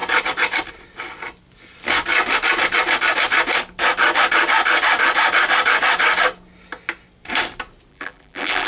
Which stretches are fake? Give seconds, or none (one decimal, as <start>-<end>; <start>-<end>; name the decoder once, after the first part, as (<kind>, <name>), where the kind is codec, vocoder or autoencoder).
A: 7.9-8.7 (vocoder, BigVGAN v2)